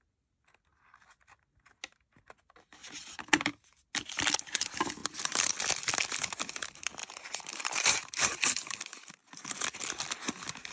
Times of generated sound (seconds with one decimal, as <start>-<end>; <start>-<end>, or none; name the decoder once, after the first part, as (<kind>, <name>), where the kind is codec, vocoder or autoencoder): 2.8-3.9 (vocoder, BigVGAN v2); 5.0-5.6; 7.0-9.1